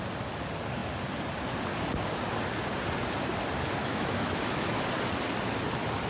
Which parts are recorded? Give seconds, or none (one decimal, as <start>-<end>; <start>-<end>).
0.0-3.8; 4.8-6.1